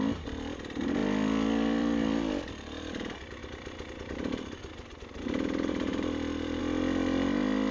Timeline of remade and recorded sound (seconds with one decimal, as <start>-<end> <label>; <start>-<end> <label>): 0.0-1.0 recorded; 1.0-2.5 remade; 2.5-3.4 recorded; 3.4-4.6 remade; 4.6-5.9 recorded; 5.9-6.6 remade; 6.6-7.7 recorded

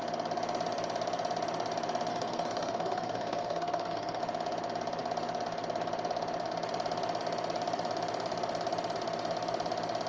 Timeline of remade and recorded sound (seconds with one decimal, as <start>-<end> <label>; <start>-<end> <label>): 0.0-2.1 recorded; 2.1-4.2 remade; 4.2-10.1 recorded

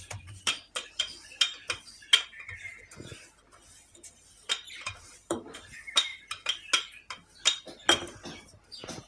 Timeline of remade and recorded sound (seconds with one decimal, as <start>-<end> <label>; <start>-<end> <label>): 0.0-1.5 remade; 1.5-4.7 recorded; 4.7-6.1 remade; 6.1-7.7 recorded; 7.7-9.1 remade